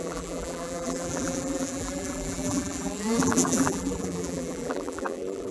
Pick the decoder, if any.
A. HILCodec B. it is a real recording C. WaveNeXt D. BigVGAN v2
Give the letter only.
D